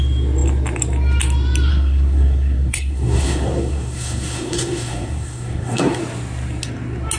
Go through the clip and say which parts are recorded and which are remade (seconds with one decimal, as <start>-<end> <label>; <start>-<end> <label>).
0.0-1.7 recorded; 1.7-6.0 remade; 6.0-7.2 recorded